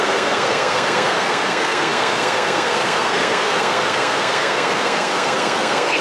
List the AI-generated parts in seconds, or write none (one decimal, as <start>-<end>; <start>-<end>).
0.0-6.0